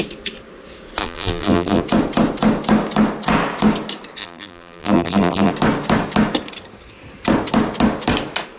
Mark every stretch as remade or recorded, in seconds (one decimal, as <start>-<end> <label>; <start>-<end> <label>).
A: 0.0-1.0 recorded; 1.0-1.8 remade; 1.8-4.2 recorded; 4.2-5.5 remade; 5.5-8.6 recorded